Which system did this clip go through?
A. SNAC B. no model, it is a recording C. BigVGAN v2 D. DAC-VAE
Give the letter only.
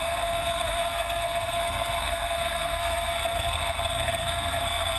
A